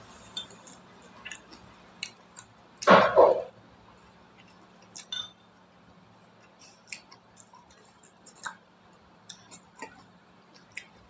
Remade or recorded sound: recorded